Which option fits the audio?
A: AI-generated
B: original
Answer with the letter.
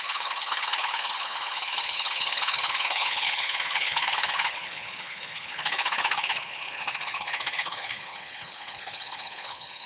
A